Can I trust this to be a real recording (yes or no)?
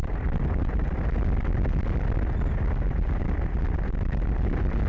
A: yes